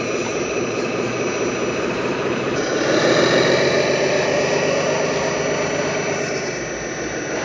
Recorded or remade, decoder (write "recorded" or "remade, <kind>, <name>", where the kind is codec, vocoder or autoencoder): recorded